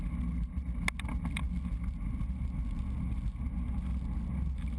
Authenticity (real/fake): real